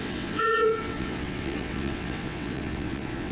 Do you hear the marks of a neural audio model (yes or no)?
yes